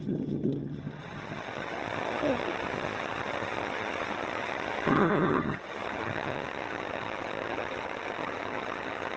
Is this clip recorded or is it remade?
remade